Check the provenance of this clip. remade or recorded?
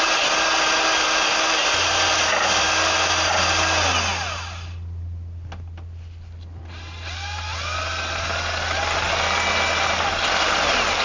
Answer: recorded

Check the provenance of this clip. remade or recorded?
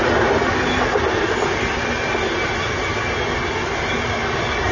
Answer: recorded